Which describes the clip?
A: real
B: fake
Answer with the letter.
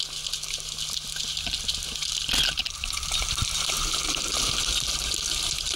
A